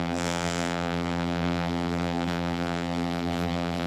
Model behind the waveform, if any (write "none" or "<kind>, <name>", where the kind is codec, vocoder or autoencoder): vocoder, BigVGAN v2